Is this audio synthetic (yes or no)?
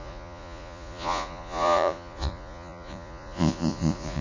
yes